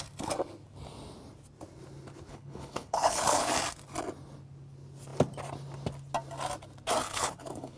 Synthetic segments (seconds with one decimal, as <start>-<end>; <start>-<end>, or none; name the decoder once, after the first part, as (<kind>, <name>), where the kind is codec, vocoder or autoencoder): 2.3-3.5 (codec, HILCodec); 7.0-7.8